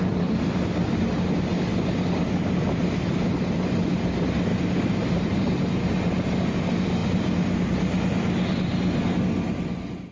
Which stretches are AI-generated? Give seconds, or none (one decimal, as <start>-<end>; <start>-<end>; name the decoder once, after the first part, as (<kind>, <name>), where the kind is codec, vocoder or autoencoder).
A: 4.5-6.5 (vocoder, BigVGAN v2)